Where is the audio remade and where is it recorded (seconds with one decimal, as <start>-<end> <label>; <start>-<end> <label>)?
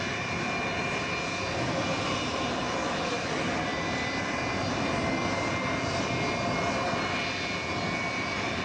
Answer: 0.0-2.8 recorded; 2.8-3.6 remade; 3.6-8.6 recorded